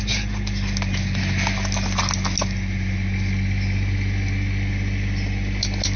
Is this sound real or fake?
real